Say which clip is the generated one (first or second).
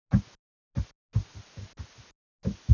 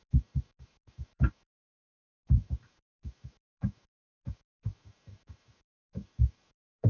second